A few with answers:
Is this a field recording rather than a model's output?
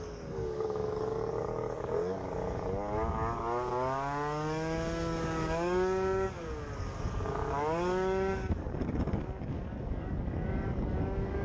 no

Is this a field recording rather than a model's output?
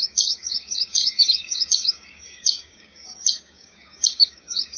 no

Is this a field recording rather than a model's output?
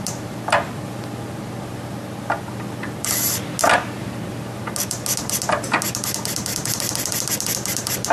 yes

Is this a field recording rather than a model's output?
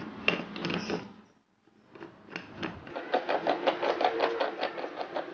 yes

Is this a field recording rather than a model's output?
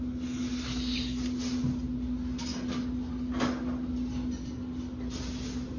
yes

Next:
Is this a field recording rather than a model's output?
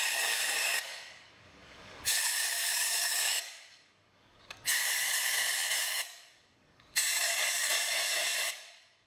no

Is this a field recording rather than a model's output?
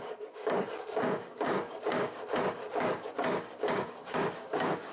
no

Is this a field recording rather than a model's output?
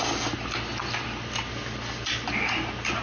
yes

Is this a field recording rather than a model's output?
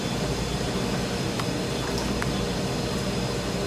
yes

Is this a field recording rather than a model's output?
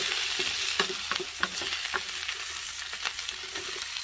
yes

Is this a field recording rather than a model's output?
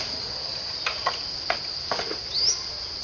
yes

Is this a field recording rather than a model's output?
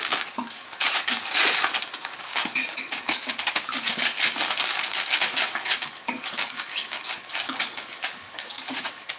no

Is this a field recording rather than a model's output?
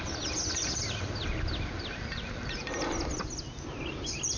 yes